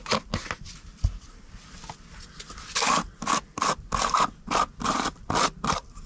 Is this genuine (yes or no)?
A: yes